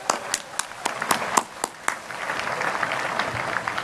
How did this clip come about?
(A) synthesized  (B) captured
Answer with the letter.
B